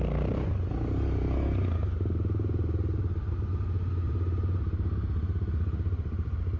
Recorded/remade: recorded